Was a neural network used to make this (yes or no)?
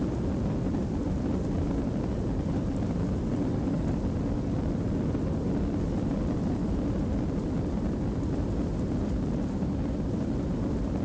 yes